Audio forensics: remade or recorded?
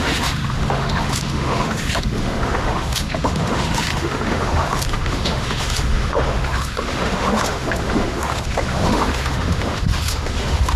remade